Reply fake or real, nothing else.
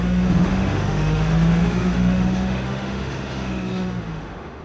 fake